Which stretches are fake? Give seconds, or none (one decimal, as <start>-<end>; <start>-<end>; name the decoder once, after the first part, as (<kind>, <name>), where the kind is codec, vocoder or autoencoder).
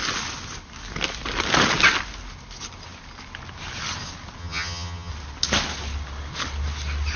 4.4-5.1 (vocoder, HiFi-GAN)